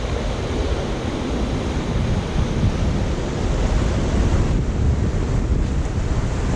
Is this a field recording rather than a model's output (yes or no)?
yes